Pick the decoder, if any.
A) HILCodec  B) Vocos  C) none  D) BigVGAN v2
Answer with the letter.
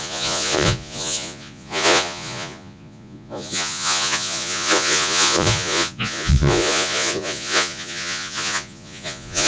B